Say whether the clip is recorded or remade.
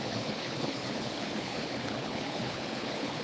remade